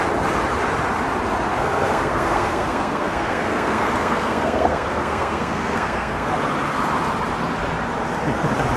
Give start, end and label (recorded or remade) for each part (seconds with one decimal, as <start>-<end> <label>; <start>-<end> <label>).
0.0-1.5 recorded; 1.5-6.3 remade; 6.3-8.8 recorded